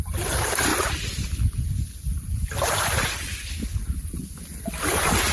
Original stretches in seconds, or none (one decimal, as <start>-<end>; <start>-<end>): 0.0-5.3